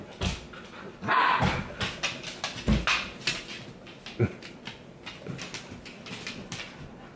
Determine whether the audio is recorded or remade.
recorded